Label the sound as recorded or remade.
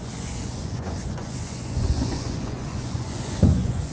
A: remade